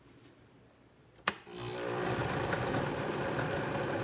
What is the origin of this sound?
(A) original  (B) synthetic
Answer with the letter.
B